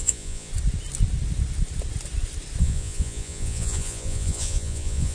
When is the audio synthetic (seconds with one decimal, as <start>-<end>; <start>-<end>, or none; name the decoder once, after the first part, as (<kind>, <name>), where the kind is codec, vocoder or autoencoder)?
0.0-0.5 (vocoder, Vocos); 2.6-5.1